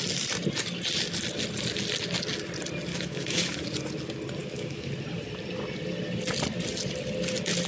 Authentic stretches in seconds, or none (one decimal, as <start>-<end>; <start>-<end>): 0.0-2.9; 3.6-4.4; 4.9-7.7